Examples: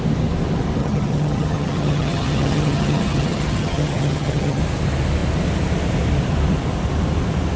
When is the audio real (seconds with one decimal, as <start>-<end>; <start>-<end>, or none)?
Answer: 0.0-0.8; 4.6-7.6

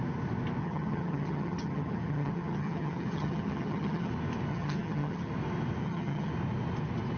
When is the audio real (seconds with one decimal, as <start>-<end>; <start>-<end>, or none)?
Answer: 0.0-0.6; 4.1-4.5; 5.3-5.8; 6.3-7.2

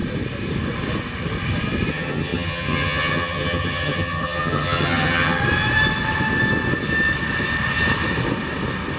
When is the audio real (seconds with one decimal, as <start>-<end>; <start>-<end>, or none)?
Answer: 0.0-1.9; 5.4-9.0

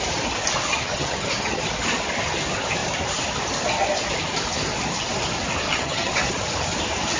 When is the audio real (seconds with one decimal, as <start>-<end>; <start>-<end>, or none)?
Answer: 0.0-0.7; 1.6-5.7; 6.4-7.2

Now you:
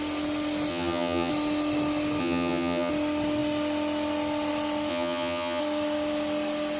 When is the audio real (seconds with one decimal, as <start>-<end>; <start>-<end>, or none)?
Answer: 0.0-0.7; 1.3-2.2; 2.9-4.9; 5.6-6.8

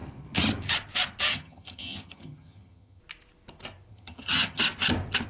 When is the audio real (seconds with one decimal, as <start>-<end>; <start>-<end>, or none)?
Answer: 0.0-1.3; 3.0-3.9; 4.6-5.3

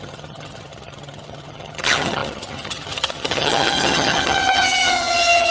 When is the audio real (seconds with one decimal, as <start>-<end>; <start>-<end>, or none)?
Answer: none